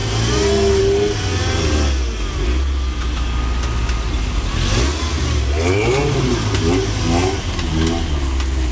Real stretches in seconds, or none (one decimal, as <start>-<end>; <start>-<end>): 0.0-8.7